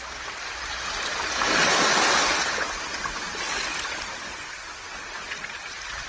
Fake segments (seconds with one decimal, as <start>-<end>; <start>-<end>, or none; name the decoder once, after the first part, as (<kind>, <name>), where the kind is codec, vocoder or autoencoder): 1.1-1.9 (vocoder, BigVGAN v2)